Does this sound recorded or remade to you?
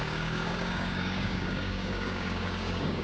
remade